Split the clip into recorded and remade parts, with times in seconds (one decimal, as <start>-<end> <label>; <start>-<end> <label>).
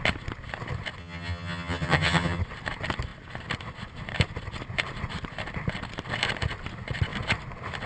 0.0-1.0 recorded; 1.0-2.4 remade; 2.4-7.9 recorded